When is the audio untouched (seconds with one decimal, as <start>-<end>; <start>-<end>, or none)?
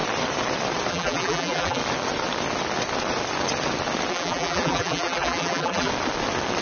0.0-0.9; 1.8-4.1; 5.9-6.6